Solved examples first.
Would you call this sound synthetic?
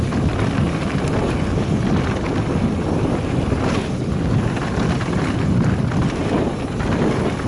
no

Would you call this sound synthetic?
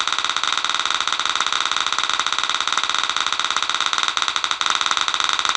no